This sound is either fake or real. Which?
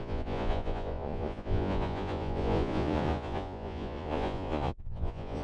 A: fake